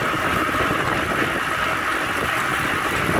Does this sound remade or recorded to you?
recorded